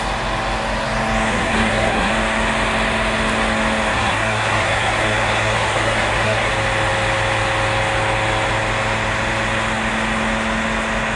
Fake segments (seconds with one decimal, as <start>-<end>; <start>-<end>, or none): 1.3-2.1; 3.9-6.5